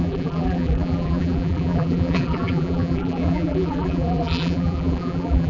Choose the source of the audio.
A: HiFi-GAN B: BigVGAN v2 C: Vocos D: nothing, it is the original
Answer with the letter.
B